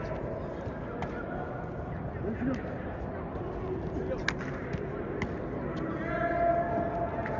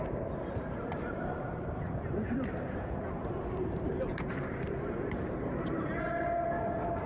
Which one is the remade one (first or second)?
second